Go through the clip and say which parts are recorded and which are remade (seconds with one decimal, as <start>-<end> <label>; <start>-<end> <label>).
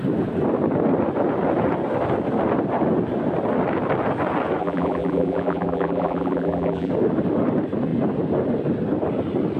0.0-4.6 recorded; 4.6-6.9 remade; 6.9-9.6 recorded